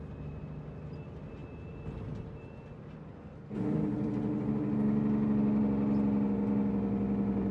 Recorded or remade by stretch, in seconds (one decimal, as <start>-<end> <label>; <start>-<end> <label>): 0.0-7.5 recorded